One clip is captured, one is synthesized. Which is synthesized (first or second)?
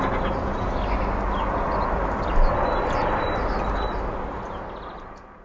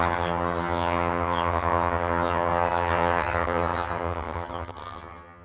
second